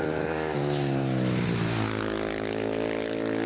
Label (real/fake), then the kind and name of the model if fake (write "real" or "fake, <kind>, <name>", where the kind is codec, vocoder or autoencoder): real